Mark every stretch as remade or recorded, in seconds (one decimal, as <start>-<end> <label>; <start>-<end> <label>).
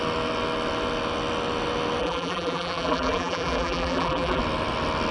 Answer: 0.0-2.0 recorded; 2.0-4.4 remade; 4.4-5.1 recorded